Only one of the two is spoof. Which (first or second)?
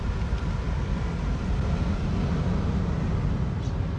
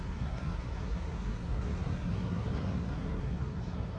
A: second